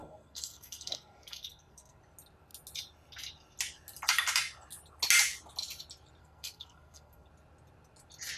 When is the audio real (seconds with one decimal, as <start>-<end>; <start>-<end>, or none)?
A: 2.0-6.2; 7.3-8.4

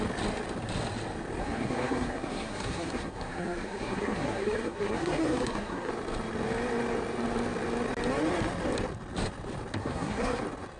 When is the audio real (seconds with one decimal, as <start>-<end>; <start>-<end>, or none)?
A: 0.0-1.4; 5.9-9.8; 10.4-10.8